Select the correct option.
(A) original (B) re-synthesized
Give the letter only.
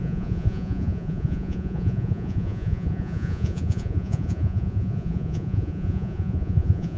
B